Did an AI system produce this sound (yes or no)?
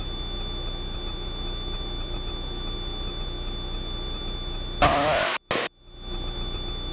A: no